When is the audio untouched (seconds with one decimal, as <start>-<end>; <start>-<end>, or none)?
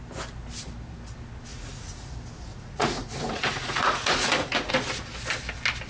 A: 0.0-1.5; 2.1-2.5; 4.7-5.9